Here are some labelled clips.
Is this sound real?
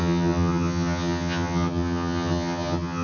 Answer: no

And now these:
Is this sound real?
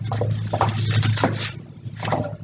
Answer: yes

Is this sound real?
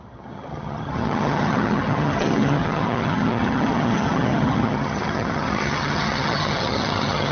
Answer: no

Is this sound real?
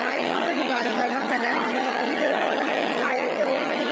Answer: no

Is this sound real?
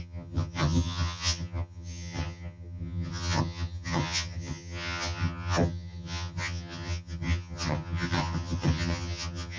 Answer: no